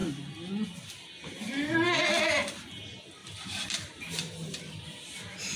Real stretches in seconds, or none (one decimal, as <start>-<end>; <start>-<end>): 0.0-3.2; 4.6-5.6